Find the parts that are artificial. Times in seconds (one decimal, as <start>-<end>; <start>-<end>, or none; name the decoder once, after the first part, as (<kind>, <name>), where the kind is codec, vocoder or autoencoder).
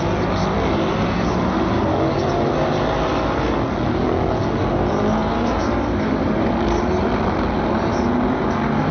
5.2-5.7 (vocoder, BigVGAN v2)